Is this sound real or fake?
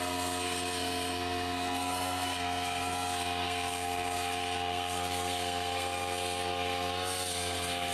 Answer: fake